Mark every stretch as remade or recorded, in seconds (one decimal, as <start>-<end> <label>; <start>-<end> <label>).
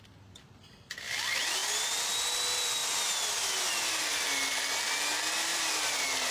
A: 0.0-5.5 recorded; 5.5-6.3 remade